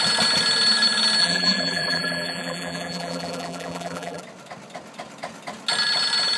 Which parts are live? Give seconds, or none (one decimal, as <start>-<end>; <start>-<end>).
0.0-1.2; 4.2-6.4